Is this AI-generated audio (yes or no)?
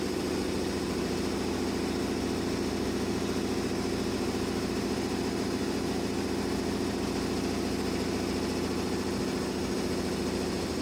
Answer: no